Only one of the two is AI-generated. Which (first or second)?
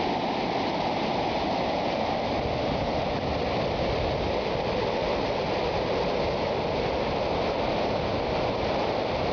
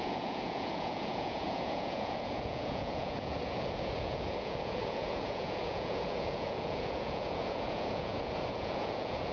second